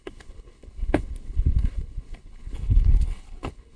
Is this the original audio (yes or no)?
no